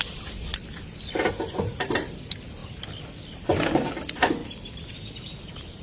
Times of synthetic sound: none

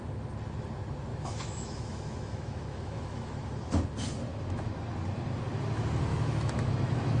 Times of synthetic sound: 1.1-3.4 (autoencoder, DAC-VAE); 4.3-4.8; 6.1-7.2

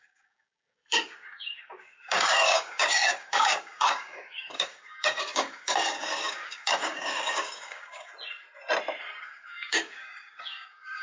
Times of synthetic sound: 0.0-8.1 (codec, DAC); 9.2-11.0

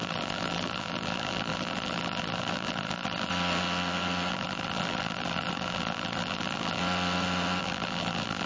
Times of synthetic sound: 0.0-3.3 (vocoder, BigVGAN v2); 4.3-6.8; 7.6-8.5